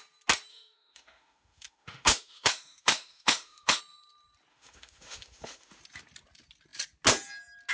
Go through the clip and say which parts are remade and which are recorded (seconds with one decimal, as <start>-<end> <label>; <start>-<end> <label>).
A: 0.0-0.5 recorded; 0.5-3.8 remade; 3.8-4.5 recorded; 4.5-5.8 remade; 5.8-7.7 recorded